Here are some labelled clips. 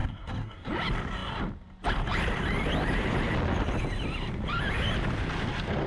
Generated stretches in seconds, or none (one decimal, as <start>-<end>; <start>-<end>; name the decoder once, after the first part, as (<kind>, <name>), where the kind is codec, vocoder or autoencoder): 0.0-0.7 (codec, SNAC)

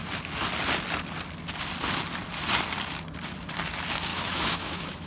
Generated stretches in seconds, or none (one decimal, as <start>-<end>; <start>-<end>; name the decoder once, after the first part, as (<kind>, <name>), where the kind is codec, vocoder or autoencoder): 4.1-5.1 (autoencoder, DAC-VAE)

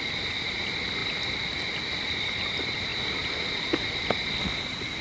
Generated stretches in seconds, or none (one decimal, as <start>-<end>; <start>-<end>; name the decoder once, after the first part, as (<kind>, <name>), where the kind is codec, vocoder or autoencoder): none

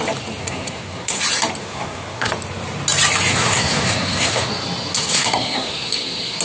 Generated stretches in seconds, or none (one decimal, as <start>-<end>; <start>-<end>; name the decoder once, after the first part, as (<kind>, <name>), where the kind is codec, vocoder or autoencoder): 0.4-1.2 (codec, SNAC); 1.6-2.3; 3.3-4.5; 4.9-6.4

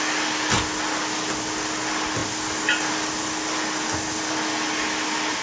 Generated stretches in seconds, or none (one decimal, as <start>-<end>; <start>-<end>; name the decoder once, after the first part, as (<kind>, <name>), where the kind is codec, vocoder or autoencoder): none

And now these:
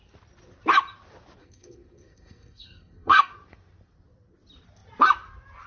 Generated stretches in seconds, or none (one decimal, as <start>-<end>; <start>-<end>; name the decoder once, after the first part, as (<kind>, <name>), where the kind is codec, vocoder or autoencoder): 1.4-3.3 (codec, SNAC)

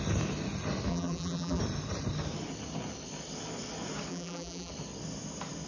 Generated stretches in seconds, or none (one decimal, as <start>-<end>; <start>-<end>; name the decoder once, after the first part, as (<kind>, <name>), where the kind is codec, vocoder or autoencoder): 0.9-1.6 (vocoder, BigVGAN v2); 4.1-4.7

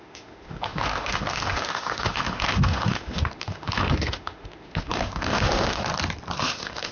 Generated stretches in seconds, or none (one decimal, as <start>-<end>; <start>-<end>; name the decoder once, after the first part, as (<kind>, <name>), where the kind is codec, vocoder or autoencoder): 0.0-5.9 (autoencoder, DAC-VAE); 6.4-6.9